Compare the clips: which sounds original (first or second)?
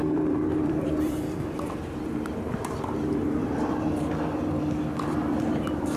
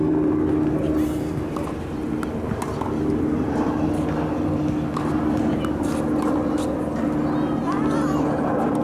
second